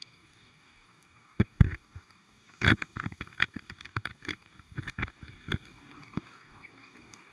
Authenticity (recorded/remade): remade